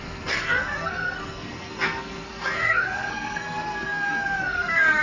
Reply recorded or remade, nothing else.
remade